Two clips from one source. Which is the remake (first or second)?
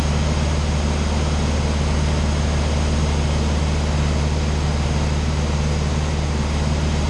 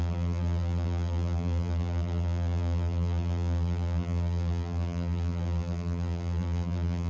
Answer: second